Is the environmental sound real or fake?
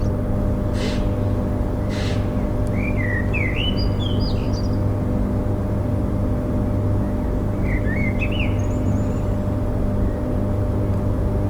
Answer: real